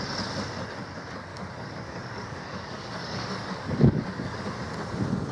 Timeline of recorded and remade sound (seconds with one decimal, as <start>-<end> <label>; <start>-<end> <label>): 0.0-1.3 recorded; 1.3-4.5 remade; 4.5-5.3 recorded